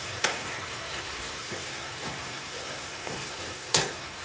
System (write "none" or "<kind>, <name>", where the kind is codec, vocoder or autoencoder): codec, SNAC